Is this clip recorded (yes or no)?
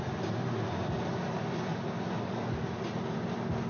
yes